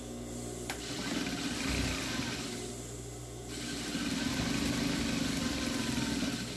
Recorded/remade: recorded